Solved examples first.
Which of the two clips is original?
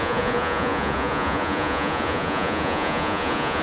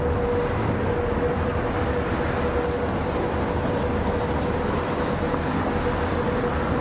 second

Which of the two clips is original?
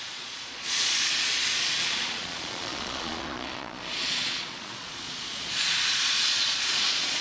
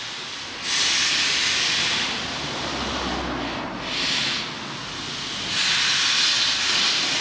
second